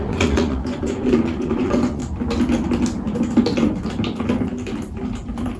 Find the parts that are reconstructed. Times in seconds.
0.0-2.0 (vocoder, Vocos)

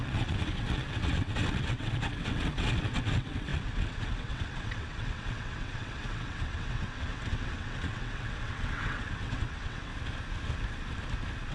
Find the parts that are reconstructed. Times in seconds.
0.0-9.9 (vocoder, WaveNeXt)

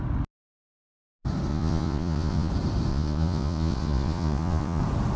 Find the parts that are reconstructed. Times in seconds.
1.5-2.5 (vocoder, Vocos); 2.9-4.8

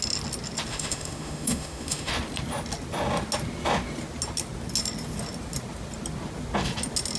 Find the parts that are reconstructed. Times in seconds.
0.7-2.1 (autoencoder, DAC-VAE)

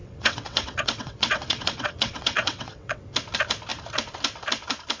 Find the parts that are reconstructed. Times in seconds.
0.0-3.0 (vocoder, WaveNeXt)

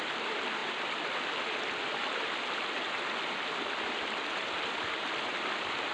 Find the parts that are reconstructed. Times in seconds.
none

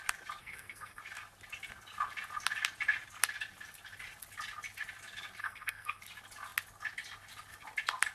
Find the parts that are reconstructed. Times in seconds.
0.4-1.0 (codec, SNAC); 5.4-6.0